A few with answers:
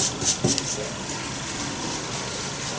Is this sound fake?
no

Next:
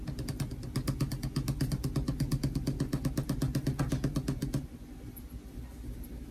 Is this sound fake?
no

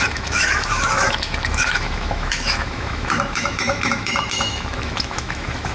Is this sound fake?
yes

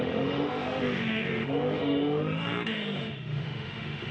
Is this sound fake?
yes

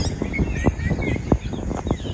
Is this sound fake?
no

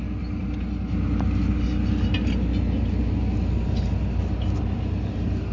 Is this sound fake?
no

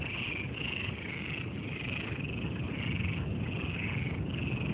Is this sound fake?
no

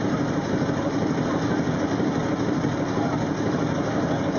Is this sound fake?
no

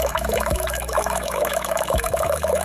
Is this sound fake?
yes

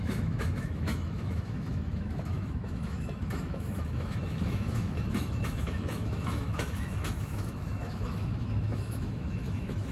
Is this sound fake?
yes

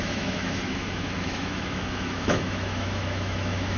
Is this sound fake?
yes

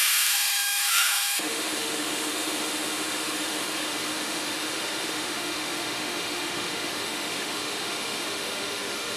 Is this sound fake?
yes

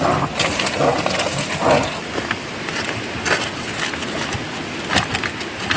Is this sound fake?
no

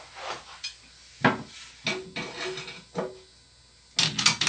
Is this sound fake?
no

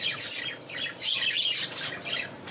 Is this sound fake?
no